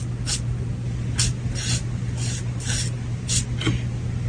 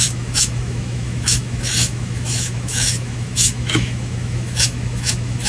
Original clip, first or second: first